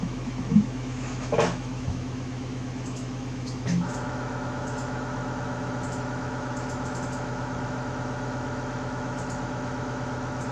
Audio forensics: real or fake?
fake